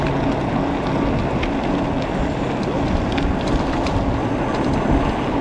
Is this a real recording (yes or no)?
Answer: yes